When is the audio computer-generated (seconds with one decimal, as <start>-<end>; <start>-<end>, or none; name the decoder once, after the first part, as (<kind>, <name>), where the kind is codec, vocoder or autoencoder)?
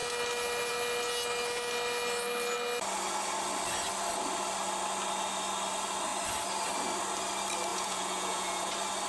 7.7-8.7 (vocoder, Vocos)